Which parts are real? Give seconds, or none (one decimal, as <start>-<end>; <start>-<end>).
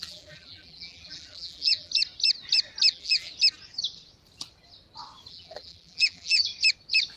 1.9-2.9; 3.3-5.3; 6.5-7.2